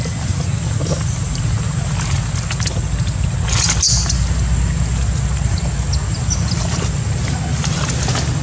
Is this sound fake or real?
real